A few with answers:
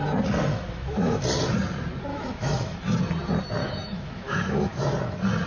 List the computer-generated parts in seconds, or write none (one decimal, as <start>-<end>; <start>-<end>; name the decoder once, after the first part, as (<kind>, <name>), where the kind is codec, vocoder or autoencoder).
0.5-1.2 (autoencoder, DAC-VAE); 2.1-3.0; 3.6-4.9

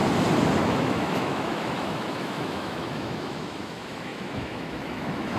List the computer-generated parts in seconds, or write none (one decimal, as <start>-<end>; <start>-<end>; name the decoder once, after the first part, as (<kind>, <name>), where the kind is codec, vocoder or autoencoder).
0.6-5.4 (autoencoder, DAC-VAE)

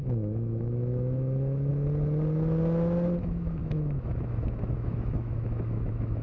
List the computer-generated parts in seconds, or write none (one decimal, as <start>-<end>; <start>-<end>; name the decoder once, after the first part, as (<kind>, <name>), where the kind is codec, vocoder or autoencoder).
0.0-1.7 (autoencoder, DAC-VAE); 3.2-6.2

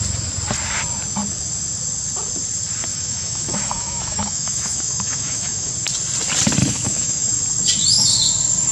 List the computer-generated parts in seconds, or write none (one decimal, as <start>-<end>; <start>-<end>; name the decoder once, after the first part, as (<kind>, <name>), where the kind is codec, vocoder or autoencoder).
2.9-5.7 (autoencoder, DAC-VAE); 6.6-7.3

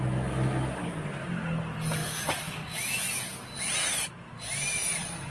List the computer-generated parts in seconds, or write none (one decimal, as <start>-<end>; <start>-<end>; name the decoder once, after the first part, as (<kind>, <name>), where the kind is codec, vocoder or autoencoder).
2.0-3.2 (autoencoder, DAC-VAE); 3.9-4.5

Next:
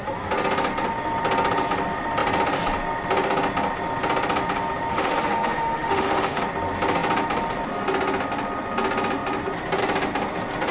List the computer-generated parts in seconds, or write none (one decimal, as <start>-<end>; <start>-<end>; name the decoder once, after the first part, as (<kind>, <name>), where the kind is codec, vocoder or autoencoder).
4.9-6.4 (autoencoder, DAC-VAE)